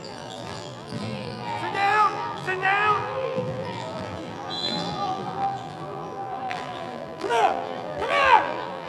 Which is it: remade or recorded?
remade